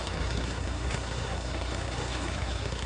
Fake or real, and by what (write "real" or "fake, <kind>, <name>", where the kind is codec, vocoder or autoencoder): fake, codec, SNAC